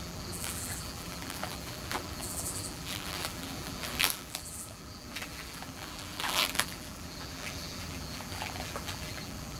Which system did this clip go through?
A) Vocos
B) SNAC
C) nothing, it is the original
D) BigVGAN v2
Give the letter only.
D